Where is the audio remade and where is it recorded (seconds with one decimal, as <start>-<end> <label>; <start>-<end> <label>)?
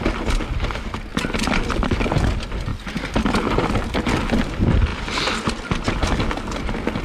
0.0-1.1 recorded; 1.1-1.7 remade; 1.7-2.7 recorded; 2.7-3.7 remade; 3.7-4.9 recorded; 4.9-5.9 remade; 5.9-7.0 recorded